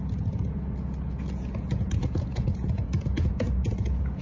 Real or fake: fake